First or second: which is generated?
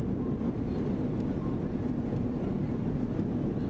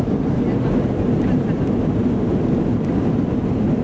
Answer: second